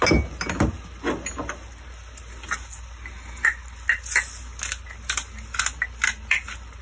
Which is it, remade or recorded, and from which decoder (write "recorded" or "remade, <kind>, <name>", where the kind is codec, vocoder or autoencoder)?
recorded